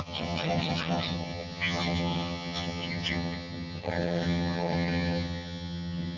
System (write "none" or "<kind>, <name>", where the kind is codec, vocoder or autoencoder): vocoder, HiFi-GAN